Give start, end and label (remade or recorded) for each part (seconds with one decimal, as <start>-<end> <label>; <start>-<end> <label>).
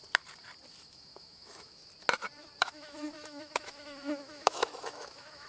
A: 0.0-0.8 recorded; 0.8-1.8 remade; 1.8-2.6 recorded; 2.6-5.5 remade